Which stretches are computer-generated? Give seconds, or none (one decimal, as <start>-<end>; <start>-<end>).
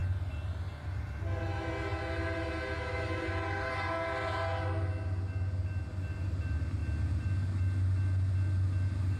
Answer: none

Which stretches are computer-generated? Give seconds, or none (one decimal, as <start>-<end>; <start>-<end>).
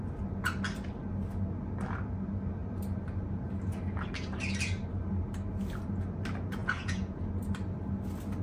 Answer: 6.6-7.2